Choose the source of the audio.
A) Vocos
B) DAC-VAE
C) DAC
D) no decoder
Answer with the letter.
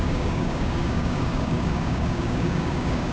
C